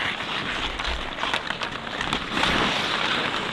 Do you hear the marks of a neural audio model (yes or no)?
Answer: no